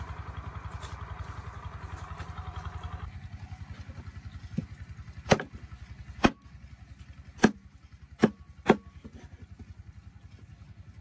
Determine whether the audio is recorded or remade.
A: recorded